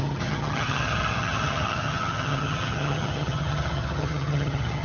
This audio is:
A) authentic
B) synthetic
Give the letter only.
B